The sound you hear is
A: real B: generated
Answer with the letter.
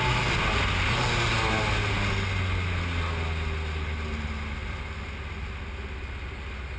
A